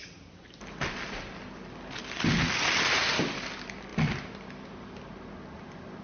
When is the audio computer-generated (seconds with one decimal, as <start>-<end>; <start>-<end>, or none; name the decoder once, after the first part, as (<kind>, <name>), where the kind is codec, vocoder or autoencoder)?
none